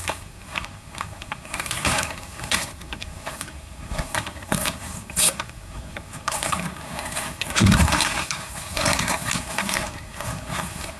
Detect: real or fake fake